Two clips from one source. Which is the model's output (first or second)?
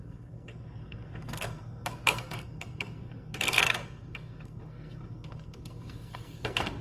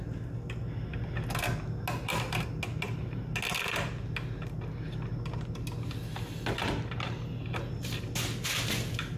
first